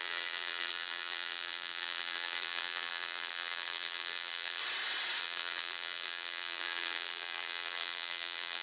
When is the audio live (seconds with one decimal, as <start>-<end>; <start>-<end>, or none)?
4.6-5.2